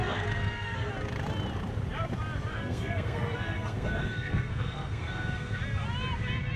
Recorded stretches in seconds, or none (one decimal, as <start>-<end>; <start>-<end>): 0.9-2.5; 5.6-6.6